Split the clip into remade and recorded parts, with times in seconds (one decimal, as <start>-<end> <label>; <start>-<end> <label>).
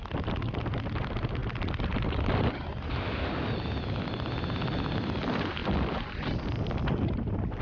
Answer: 0.0-5.6 recorded; 5.6-6.2 remade; 6.2-7.6 recorded